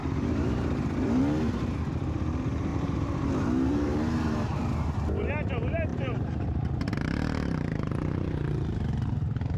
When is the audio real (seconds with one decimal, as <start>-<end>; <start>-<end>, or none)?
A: 1.2-2.7; 5.1-5.9; 7.9-9.6

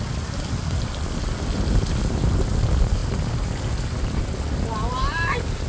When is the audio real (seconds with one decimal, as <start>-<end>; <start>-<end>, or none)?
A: 0.0-5.7

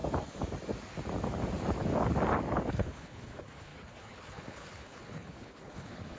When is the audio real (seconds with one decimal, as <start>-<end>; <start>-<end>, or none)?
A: 0.0-2.7

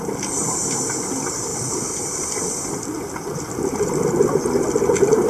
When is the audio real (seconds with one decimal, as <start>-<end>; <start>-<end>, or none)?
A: 0.0-5.3

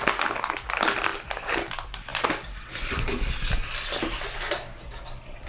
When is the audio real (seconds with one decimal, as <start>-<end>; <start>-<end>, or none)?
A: 0.0-5.5